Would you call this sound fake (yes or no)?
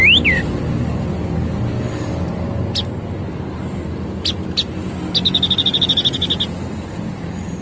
no